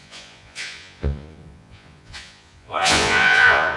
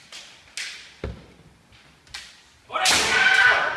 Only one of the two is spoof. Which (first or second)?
first